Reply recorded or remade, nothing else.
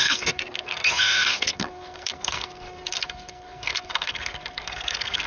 remade